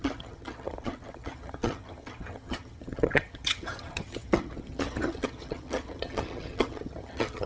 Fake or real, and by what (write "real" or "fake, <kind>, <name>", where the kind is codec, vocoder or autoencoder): fake, vocoder, HiFi-GAN